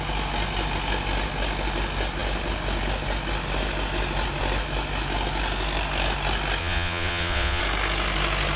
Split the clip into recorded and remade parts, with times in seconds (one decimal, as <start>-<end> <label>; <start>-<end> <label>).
0.0-6.6 recorded; 6.6-7.6 remade; 7.6-8.6 recorded